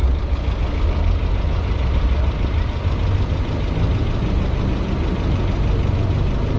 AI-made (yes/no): no